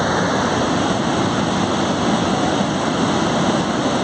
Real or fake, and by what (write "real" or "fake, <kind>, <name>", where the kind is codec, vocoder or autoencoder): real